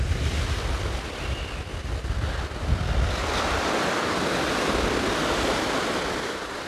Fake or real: real